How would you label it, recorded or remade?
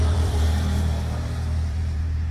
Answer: remade